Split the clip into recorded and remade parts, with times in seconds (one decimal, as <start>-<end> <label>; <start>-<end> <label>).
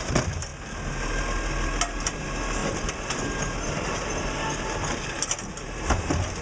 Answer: 0.0-6.4 recorded